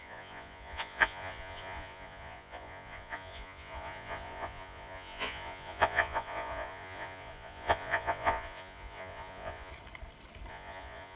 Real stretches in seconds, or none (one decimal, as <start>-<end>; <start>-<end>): 9.7-10.5